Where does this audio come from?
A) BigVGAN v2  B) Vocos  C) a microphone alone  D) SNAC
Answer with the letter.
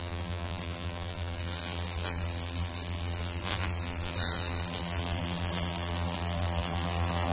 A